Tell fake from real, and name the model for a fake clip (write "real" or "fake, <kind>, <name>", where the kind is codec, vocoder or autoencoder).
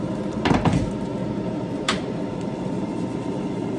fake, vocoder, BigVGAN v2